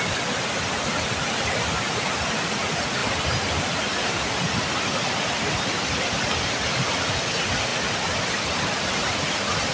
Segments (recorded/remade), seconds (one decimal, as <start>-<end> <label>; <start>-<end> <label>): 0.0-9.7 recorded